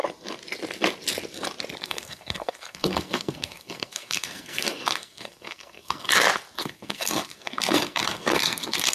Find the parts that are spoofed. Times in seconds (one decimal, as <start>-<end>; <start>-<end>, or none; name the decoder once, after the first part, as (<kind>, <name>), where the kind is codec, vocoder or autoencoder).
1.8-6.1 (codec, SNAC); 6.6-8.9